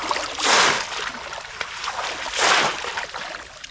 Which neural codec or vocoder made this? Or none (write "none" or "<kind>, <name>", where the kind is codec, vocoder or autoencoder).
none